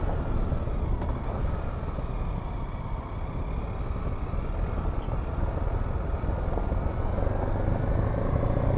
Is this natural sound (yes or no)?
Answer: yes